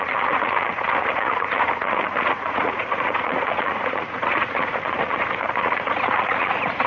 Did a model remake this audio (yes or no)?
yes